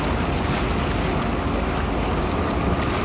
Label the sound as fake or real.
real